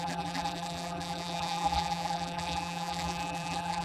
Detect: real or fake fake